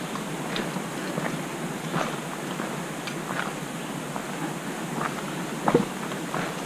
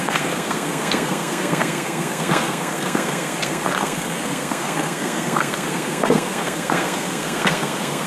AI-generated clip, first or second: second